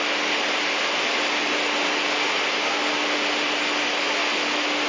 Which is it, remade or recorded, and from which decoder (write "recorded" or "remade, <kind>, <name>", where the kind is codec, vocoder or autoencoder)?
recorded